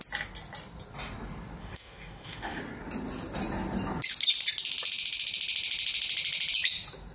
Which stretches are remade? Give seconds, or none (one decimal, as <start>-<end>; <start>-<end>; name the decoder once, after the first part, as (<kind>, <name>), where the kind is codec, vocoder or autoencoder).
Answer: 1.6-2.6 (autoencoder, DAC-VAE)